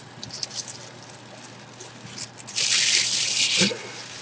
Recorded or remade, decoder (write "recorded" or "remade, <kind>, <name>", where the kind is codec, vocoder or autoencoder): recorded